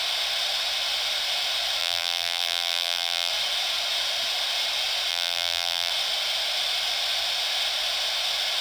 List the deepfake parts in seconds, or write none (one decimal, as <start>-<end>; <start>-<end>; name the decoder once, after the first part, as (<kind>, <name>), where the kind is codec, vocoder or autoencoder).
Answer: 1.8-3.3 (vocoder, BigVGAN v2); 5.1-5.9